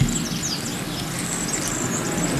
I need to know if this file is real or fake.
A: real